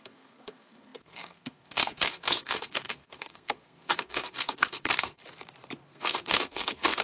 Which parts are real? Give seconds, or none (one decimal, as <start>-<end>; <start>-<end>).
5.2-5.9